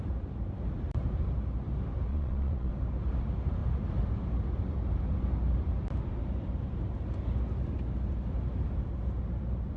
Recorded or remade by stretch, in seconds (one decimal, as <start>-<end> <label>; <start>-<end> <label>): 0.0-2.1 recorded; 2.1-2.7 remade; 2.7-9.8 recorded